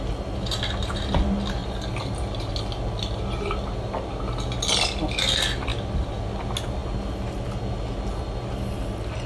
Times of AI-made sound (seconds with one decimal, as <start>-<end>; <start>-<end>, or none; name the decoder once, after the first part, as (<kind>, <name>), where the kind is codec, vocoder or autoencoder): none